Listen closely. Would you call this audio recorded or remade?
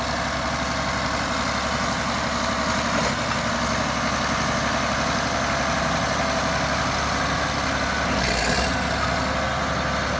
recorded